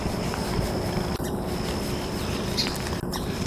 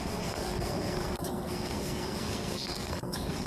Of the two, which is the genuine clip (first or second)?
first